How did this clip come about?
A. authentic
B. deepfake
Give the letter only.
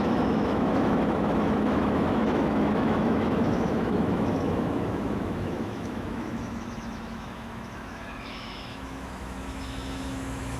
B